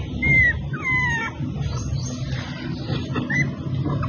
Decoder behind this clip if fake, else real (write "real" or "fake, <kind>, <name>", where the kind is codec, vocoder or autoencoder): real